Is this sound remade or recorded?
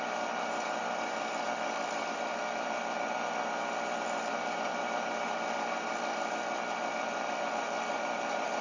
recorded